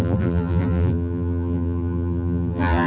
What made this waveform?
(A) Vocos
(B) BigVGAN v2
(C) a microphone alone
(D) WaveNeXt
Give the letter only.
B